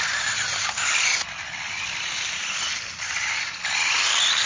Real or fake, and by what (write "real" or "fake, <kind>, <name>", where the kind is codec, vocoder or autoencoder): real